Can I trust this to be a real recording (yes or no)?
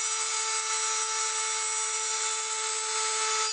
yes